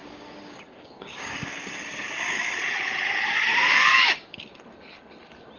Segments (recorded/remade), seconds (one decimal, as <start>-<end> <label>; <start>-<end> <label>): 0.0-2.6 remade; 2.6-3.5 recorded; 3.5-4.4 remade; 4.4-5.6 recorded